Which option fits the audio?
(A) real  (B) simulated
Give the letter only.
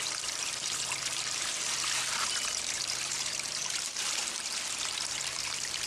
B